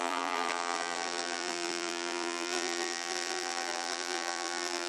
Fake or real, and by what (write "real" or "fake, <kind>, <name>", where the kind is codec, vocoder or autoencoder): fake, vocoder, BigVGAN v2